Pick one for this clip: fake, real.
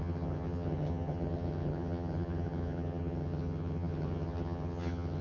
fake